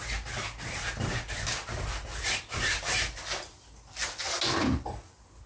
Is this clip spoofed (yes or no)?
no